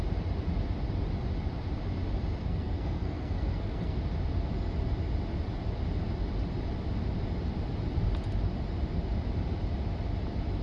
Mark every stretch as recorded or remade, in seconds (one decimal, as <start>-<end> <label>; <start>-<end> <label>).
0.0-2.4 recorded; 2.4-4.0 remade; 4.0-10.6 recorded